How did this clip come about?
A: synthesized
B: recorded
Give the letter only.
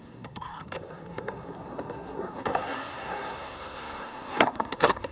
A